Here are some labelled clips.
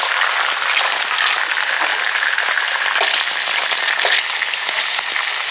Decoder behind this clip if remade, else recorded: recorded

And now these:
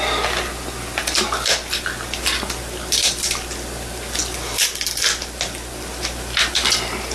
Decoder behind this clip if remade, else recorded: recorded